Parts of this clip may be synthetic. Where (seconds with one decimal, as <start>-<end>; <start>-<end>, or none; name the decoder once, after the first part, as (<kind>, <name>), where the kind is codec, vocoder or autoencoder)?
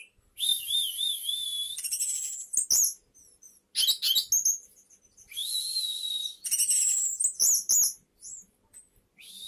none